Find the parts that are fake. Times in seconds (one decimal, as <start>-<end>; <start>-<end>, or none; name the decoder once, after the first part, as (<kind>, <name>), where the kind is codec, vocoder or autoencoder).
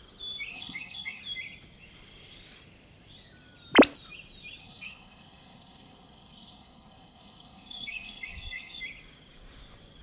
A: 0.5-1.2 (codec, SNAC); 4.6-8.8